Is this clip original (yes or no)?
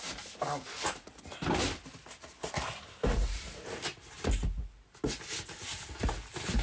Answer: yes